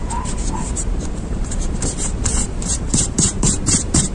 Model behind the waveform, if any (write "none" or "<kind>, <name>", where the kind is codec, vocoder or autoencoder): vocoder, BigVGAN v2